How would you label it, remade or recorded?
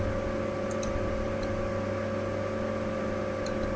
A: recorded